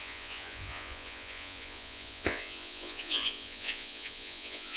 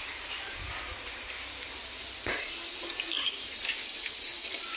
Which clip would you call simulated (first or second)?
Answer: first